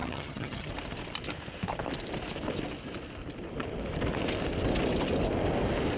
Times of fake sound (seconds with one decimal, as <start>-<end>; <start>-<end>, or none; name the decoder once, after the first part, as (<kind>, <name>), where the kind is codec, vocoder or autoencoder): 0.0-0.7 (vocoder, HiFi-GAN)